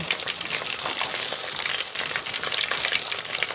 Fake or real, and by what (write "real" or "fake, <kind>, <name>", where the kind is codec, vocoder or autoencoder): real